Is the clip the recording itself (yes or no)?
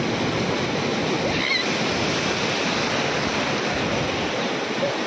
yes